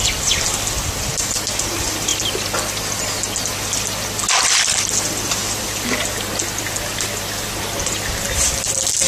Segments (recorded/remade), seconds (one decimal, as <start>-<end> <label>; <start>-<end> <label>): 0.0-9.1 recorded

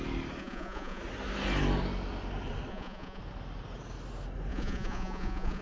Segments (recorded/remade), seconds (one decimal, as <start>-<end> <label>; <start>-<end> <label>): 0.0-0.4 recorded; 0.4-1.0 remade; 1.0-2.7 recorded; 2.7-3.2 remade; 3.2-4.5 recorded; 4.5-5.6 remade

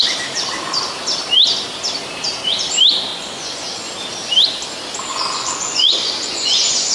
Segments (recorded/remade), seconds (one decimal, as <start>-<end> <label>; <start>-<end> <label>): 0.0-3.1 recorded; 3.1-3.9 remade; 3.9-5.1 recorded; 5.1-6.9 remade

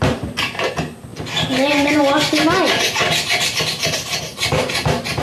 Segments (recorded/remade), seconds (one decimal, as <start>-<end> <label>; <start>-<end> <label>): 0.0-5.2 recorded

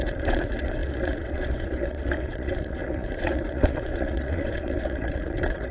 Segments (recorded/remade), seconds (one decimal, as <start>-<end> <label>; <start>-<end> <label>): 0.0-5.7 remade

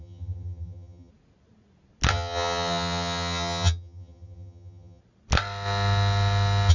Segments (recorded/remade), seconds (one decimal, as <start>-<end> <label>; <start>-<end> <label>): 0.0-1.1 remade; 1.1-2.1 recorded; 2.1-5.0 remade; 5.0-6.7 recorded

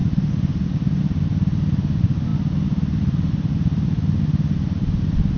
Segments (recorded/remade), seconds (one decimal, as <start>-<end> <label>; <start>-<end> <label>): 0.0-1.0 remade; 1.0-5.4 recorded